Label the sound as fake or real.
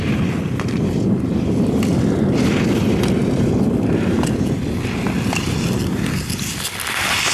real